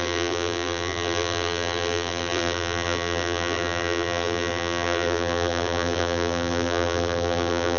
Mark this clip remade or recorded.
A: remade